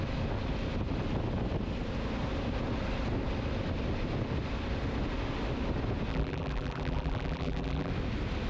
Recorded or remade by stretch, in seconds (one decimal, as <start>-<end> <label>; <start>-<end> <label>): 0.0-6.1 recorded; 6.1-7.9 remade; 7.9-8.5 recorded